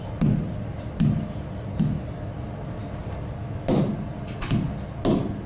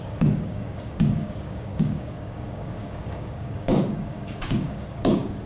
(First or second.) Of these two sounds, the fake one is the second